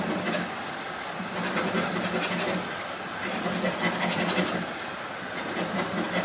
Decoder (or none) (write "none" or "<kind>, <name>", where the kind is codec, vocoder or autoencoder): none